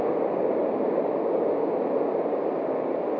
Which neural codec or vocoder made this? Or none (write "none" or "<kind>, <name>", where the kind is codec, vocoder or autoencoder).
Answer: none